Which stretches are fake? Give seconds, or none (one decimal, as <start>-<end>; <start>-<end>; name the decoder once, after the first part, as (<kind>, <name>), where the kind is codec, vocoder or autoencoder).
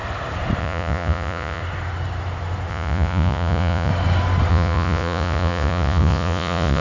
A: 0.6-1.6 (vocoder, Vocos); 2.7-3.9; 4.5-6.8